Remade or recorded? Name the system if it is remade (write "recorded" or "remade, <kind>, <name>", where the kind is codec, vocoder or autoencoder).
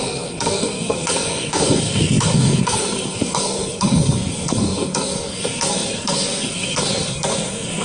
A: remade, codec, SNAC